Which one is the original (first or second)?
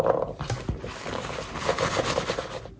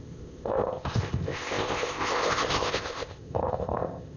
first